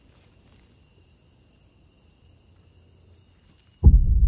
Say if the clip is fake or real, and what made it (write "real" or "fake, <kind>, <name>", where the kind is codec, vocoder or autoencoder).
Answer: real